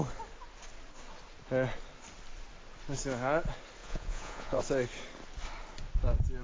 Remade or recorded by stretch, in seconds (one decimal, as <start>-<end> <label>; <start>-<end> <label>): 0.0-3.8 recorded; 3.8-4.6 remade; 4.6-6.4 recorded